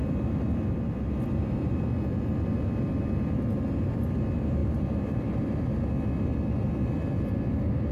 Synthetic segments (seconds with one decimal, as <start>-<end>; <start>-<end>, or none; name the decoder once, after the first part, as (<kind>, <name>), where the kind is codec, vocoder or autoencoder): 0.0-1.8 (vocoder, BigVGAN v2); 4.6-5.4

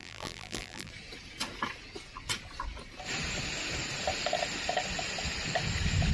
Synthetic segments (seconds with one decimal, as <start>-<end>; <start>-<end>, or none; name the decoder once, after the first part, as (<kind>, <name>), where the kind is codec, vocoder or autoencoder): 0.0-0.9 (vocoder, BigVGAN v2)